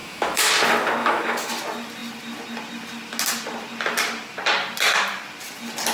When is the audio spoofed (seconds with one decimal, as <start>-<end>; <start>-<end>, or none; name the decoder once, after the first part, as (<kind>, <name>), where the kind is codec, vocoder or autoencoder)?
0.0-0.5 (autoencoder, DAC-VAE); 1.0-1.5